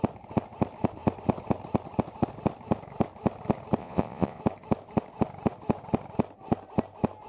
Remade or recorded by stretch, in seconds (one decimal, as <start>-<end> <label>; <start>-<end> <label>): 0.0-3.8 recorded; 3.8-4.4 remade; 4.4-7.3 recorded